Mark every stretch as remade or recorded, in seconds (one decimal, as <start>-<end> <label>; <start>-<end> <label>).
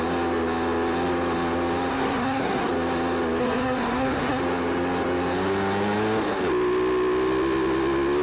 0.0-1.9 recorded; 1.9-2.7 remade; 2.7-3.4 recorded; 3.4-4.4 remade; 4.4-8.2 recorded